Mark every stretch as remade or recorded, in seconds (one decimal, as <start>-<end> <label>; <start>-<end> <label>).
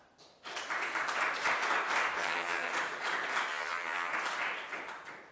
0.0-2.2 recorded; 2.2-2.7 remade; 2.7-3.5 recorded; 3.5-4.1 remade; 4.1-5.3 recorded